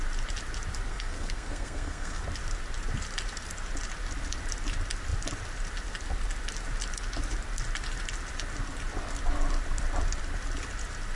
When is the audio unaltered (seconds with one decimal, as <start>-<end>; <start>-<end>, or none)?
0.0-0.9; 2.2-11.2